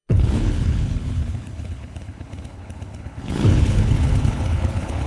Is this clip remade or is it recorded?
remade